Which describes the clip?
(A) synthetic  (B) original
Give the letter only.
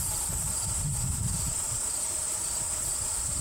B